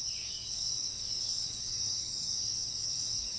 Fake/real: fake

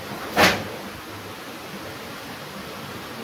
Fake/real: real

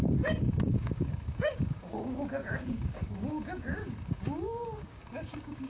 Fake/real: fake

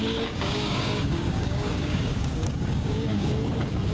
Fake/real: fake